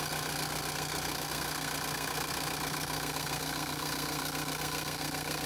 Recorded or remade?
remade